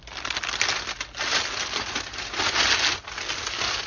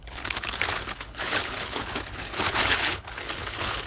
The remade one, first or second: second